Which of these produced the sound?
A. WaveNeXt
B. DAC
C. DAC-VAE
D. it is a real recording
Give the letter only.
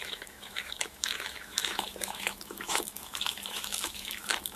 C